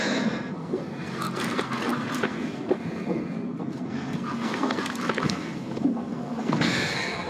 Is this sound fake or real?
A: fake